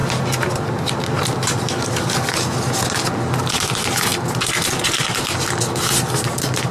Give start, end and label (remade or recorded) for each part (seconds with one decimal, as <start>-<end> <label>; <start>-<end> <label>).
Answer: 0.0-6.7 recorded